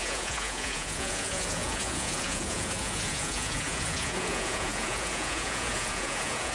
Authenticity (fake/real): fake